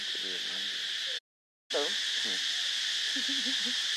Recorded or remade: recorded